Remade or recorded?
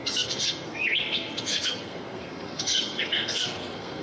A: remade